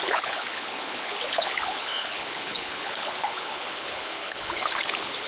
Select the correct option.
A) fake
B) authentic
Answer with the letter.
A